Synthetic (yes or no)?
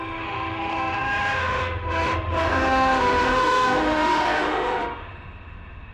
yes